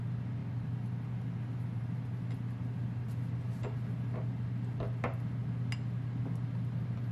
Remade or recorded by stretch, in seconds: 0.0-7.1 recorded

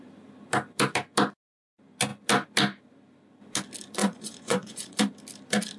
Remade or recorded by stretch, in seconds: 0.0-4.0 recorded; 4.0-5.0 remade; 5.0-5.8 recorded

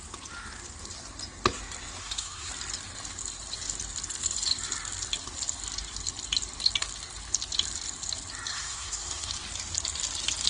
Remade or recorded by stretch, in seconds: 0.0-2.0 recorded; 2.0-2.5 remade; 2.5-8.5 recorded; 8.5-9.3 remade; 9.3-10.5 recorded

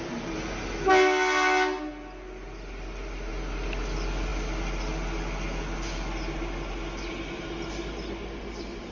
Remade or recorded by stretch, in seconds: 0.0-8.9 recorded

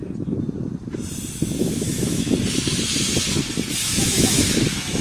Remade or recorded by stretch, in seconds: 0.0-1.6 recorded; 1.6-2.3 remade; 2.3-3.8 recorded; 3.8-5.0 remade